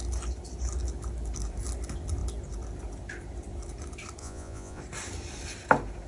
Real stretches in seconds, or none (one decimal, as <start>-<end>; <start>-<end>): 0.0-4.2; 4.8-6.1